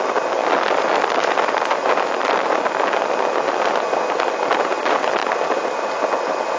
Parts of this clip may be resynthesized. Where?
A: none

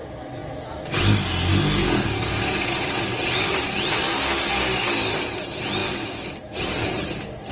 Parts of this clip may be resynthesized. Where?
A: none